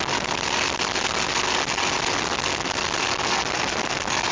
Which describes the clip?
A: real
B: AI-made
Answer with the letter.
A